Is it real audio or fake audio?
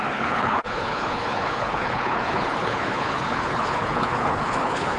fake